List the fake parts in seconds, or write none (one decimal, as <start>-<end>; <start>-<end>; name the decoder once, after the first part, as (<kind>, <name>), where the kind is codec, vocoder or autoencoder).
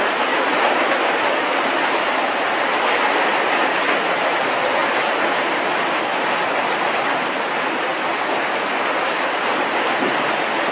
4.8-6.7 (vocoder, BigVGAN v2)